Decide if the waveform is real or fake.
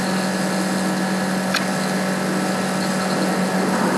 real